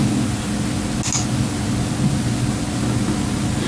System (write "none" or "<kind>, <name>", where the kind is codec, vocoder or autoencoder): none